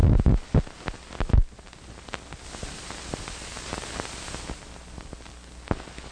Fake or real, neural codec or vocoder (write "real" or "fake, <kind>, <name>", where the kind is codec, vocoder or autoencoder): real